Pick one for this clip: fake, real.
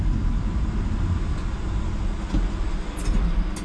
real